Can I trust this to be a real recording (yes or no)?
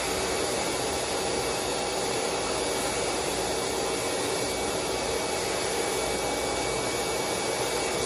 yes